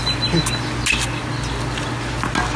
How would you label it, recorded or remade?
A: recorded